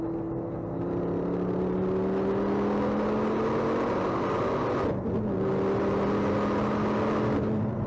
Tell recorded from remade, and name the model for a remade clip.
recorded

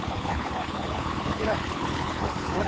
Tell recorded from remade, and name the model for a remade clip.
remade, codec, HILCodec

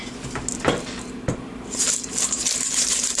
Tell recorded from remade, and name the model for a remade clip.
recorded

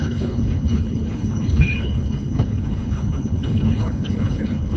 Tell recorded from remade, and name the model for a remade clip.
remade, codec, HILCodec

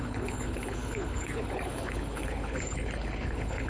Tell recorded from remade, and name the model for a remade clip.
remade, codec, HILCodec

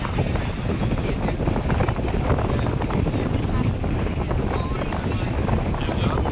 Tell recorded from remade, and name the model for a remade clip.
recorded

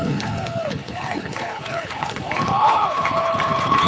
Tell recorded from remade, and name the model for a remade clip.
remade, codec, HILCodec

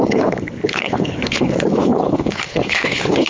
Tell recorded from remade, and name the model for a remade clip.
remade, codec, HILCodec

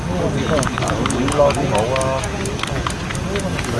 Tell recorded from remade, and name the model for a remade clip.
recorded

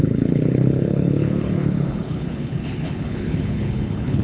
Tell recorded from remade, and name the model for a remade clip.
remade, codec, HILCodec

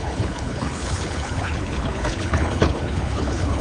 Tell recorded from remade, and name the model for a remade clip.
remade, codec, HILCodec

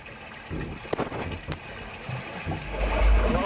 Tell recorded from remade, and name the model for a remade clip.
recorded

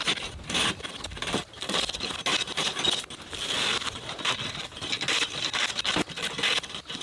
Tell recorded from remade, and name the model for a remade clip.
recorded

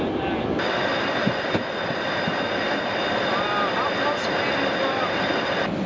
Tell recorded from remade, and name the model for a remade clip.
recorded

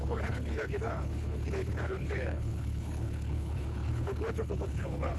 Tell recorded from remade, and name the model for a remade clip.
remade, codec, HILCodec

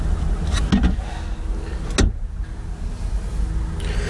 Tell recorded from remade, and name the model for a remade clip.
recorded